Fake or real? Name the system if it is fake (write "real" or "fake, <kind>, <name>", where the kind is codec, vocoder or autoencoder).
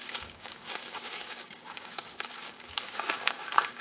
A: fake, codec, DAC